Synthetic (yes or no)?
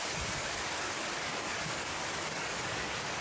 yes